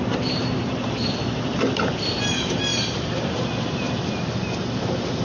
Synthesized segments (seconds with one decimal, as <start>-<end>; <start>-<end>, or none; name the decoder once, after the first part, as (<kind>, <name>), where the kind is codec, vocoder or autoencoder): none